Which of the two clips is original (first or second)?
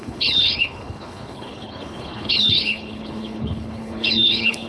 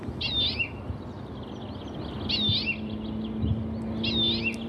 second